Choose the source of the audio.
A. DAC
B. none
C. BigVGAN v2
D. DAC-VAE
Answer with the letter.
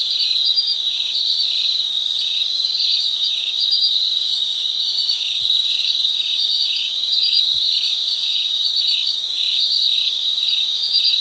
A